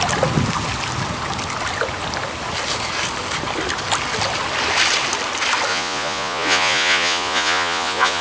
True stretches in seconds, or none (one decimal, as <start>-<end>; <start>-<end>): 0.0-5.7